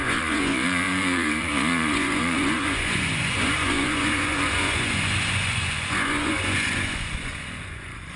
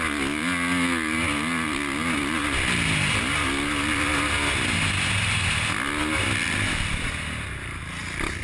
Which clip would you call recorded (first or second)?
second